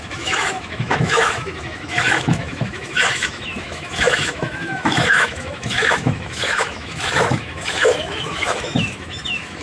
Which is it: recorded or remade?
remade